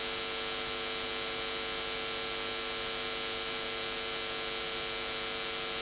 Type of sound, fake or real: real